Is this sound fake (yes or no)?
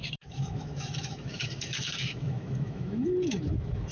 yes